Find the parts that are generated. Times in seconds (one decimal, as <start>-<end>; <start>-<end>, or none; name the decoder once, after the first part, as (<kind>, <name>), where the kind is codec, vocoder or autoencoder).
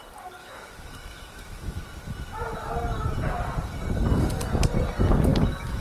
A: 0.4-1.8 (autoencoder, DAC-VAE); 5.3-5.8